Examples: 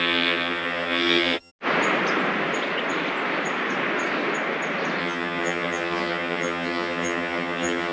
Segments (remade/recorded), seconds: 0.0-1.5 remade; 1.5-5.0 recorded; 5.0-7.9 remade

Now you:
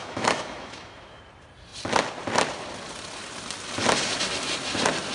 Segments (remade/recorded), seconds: 0.0-1.2 remade; 1.2-5.1 recorded

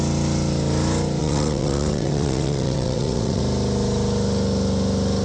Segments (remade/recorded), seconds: 0.0-1.2 recorded; 1.2-3.4 remade; 3.4-5.2 recorded

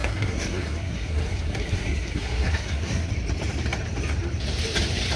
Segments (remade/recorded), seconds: 0.0-3.1 remade; 3.1-5.2 recorded